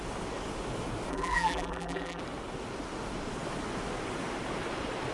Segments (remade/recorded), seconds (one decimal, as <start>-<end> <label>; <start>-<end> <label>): 0.0-1.1 recorded; 1.1-2.2 remade; 2.2-5.1 recorded

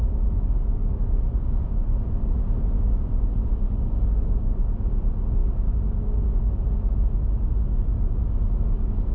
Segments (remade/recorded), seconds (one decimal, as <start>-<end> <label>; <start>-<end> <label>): 0.0-0.8 recorded; 0.8-4.9 remade; 4.9-9.1 recorded

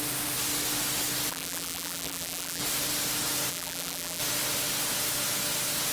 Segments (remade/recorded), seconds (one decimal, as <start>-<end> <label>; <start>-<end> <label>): 0.0-1.3 recorded; 1.3-2.6 remade; 2.6-3.5 recorded; 3.5-4.2 remade; 4.2-5.9 recorded

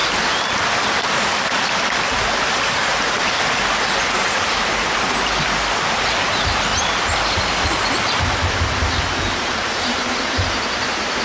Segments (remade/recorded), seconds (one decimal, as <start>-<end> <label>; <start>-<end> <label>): 0.0-2.5 recorded; 2.5-6.7 remade; 6.7-9.0 recorded; 9.0-11.2 remade

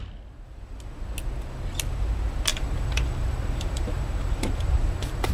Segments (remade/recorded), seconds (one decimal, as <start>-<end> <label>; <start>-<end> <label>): 0.0-2.5 recorded; 2.5-5.3 remade

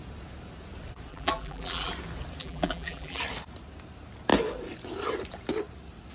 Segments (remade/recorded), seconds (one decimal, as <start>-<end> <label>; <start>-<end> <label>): 0.0-1.1 recorded; 1.1-1.9 remade; 1.9-2.4 recorded; 2.4-3.2 remade; 3.2-6.1 recorded